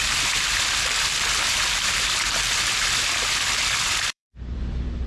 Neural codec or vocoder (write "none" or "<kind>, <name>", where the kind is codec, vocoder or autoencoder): vocoder, BigVGAN v2